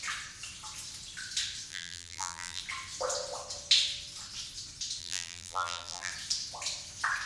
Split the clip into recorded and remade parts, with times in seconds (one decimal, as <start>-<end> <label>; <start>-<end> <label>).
0.0-1.7 recorded; 1.7-2.6 remade; 2.6-5.0 recorded; 5.0-6.1 remade; 6.1-7.3 recorded